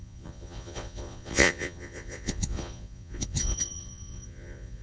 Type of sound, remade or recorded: remade